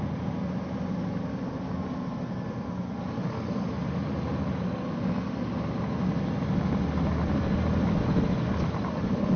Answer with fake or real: real